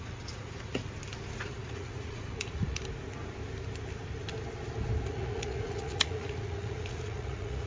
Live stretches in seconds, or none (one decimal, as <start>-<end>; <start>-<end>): 0.8-1.4; 2.8-5.1